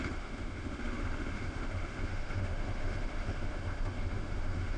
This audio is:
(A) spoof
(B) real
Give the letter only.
A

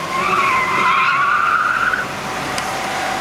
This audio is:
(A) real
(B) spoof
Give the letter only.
A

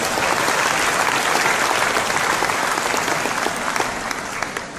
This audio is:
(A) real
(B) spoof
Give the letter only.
B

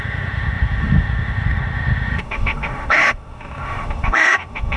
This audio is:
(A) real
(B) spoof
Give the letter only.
B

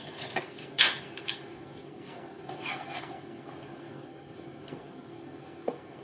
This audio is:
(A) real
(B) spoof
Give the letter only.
B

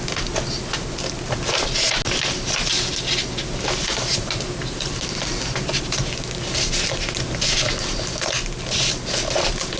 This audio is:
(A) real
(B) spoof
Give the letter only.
A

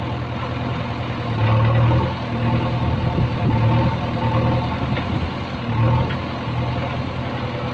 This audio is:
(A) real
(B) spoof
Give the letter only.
A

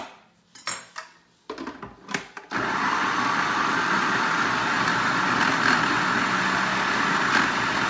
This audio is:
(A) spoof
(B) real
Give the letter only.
B